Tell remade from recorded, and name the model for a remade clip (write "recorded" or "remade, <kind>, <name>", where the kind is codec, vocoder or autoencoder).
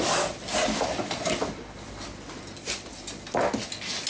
recorded